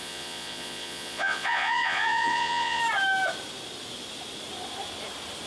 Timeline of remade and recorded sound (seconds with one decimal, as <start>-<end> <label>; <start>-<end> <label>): 0.0-2.8 remade; 2.8-5.5 recorded